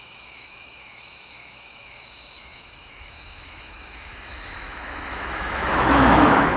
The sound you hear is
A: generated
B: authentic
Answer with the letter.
A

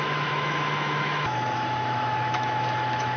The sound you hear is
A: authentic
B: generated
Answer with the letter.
B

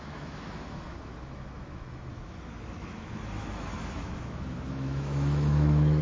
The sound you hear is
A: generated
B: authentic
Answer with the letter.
A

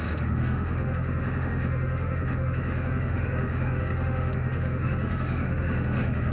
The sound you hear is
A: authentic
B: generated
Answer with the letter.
B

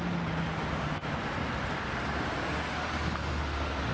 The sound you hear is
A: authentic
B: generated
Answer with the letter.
A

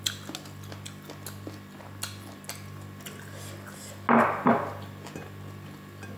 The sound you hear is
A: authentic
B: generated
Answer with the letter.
A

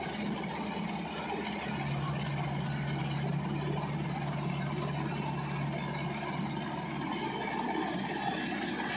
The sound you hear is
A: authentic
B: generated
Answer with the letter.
A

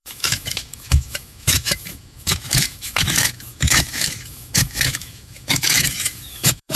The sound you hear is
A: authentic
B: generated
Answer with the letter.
B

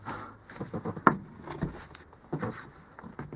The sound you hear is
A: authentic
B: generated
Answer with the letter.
A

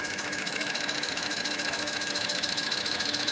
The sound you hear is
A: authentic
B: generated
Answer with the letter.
B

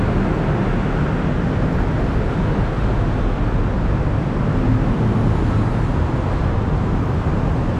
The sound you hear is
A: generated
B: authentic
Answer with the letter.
B